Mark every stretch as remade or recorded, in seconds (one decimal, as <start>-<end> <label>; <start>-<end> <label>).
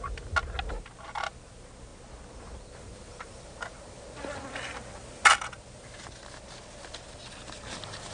0.0-8.1 recorded